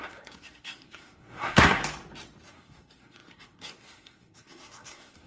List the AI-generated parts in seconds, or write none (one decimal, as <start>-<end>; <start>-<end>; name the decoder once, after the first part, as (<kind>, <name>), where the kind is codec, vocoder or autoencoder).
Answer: 0.0-1.8 (codec, SNAC); 2.5-5.3